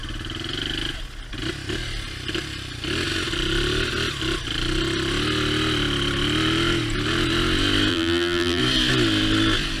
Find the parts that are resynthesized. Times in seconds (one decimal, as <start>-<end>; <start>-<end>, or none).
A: 7.9-8.6